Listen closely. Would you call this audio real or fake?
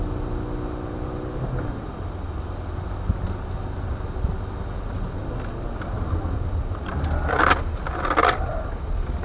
real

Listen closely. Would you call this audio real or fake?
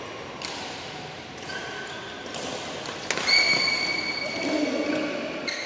real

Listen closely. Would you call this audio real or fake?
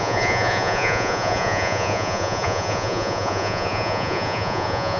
fake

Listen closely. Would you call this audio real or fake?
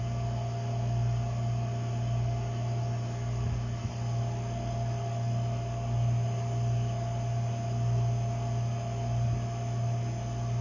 real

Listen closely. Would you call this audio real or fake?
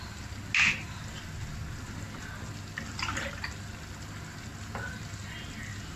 real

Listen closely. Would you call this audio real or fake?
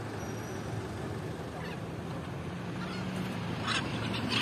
real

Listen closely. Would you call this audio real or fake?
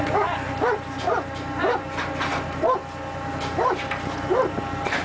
fake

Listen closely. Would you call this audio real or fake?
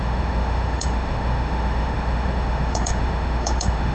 fake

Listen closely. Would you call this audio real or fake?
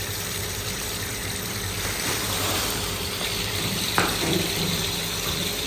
fake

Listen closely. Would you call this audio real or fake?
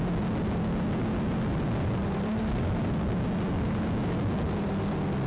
real